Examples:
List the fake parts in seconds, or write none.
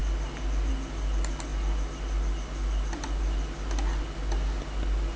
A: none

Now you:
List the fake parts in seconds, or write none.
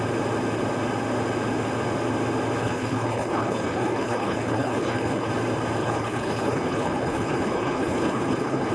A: 2.6-5.3; 5.8-8.7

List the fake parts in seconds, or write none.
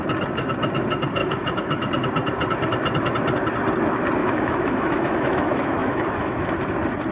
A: 1.2-1.9; 4.2-6.5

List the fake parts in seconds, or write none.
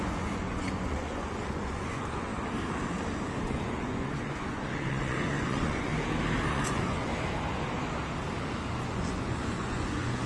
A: 0.0-2.3; 3.4-5.9; 6.5-7.1; 8.9-10.3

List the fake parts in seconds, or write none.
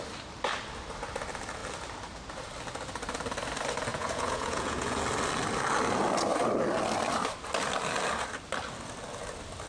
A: 3.9-5.0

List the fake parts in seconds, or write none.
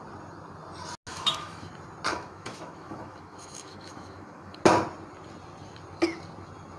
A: 1.1-1.7; 2.1-4.6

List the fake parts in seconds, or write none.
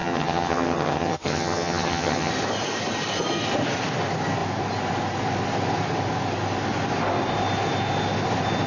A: 0.0-2.3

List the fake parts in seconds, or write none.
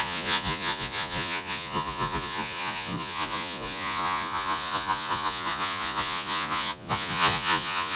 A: 0.0-8.0